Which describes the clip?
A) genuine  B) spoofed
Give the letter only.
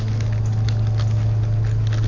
A